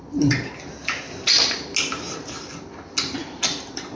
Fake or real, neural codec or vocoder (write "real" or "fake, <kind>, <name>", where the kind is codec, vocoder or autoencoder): real